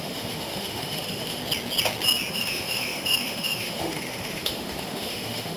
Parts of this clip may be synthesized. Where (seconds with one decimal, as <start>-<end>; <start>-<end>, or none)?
0.0-1.4; 2.3-5.6